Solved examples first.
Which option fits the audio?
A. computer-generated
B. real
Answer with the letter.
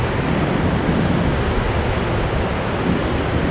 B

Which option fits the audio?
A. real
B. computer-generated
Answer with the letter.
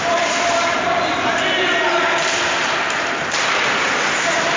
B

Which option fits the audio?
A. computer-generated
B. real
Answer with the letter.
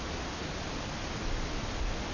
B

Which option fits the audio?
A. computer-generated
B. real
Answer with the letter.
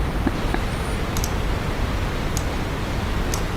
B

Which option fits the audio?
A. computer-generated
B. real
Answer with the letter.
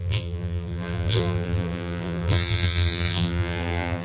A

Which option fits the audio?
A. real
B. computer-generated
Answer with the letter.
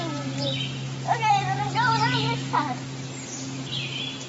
A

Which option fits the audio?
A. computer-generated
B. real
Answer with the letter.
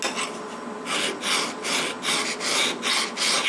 B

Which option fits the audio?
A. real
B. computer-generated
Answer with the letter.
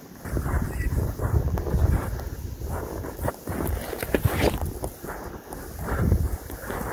A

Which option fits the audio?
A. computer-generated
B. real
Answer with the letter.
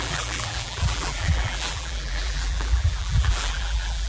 A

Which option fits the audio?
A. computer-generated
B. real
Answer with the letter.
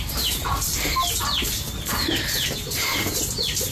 B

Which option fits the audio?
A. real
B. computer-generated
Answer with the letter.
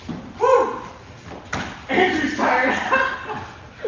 A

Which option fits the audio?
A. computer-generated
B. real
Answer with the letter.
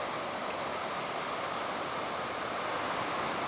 B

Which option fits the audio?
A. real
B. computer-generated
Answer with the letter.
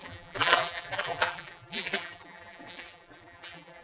B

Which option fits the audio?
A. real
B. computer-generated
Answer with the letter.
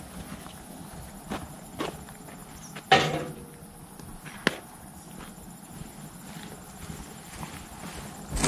A